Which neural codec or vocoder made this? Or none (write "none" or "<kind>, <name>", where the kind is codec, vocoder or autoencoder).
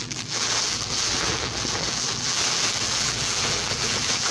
vocoder, BigVGAN v2